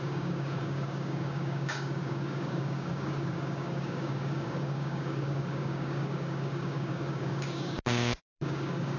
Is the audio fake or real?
fake